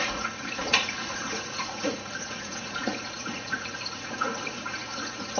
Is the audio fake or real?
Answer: fake